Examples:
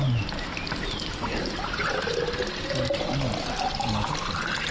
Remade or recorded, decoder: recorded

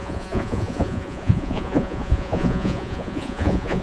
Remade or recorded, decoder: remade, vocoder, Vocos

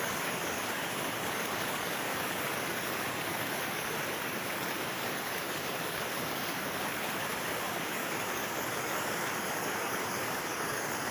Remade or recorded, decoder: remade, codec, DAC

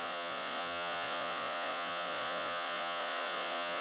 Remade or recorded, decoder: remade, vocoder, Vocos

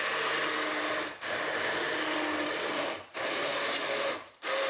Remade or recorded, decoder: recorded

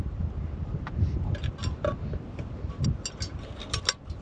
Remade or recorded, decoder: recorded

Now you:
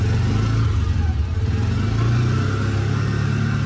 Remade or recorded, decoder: recorded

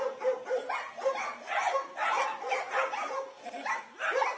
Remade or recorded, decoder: recorded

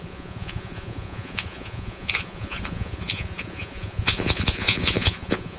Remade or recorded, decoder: remade, vocoder, Vocos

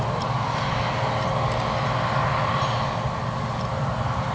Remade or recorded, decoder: recorded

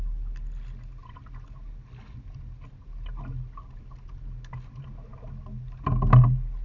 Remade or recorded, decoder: recorded